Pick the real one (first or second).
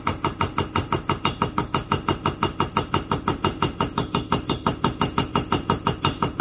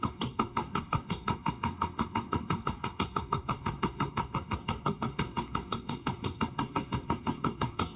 first